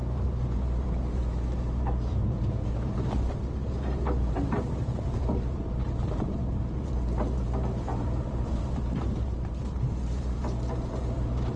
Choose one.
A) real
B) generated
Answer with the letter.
B